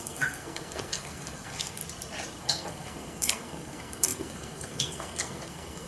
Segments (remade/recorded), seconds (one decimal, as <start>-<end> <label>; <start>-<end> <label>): 0.0-1.8 remade; 1.8-2.4 recorded; 2.4-5.9 remade